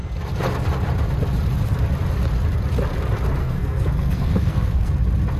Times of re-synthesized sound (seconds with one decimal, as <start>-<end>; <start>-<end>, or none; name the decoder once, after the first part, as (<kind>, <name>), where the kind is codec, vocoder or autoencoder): 3.4-4.9 (codec, SNAC)